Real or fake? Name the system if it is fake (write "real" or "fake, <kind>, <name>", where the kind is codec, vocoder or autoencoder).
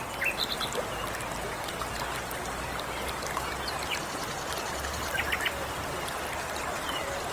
real